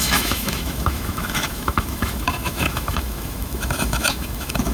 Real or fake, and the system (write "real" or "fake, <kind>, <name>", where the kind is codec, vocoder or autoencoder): fake, autoencoder, DAC-VAE